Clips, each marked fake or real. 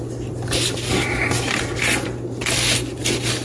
real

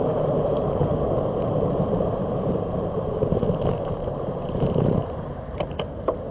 fake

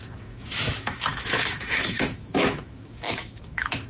fake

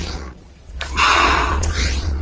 fake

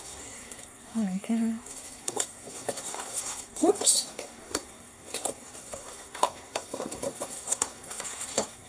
fake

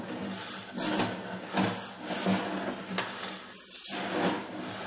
real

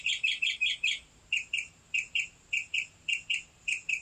fake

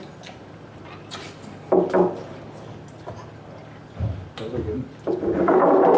real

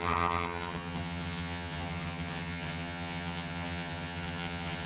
fake